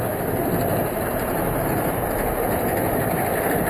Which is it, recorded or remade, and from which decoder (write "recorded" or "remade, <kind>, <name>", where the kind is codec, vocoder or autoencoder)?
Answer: remade, vocoder, BigVGAN v2